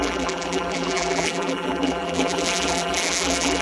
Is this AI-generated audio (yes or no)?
yes